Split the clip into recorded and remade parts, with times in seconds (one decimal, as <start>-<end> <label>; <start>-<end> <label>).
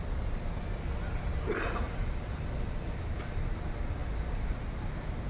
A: 0.0-5.3 recorded